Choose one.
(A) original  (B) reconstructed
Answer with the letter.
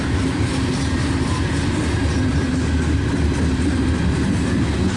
A